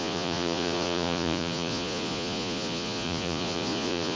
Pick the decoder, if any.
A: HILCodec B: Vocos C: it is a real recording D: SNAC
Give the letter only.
B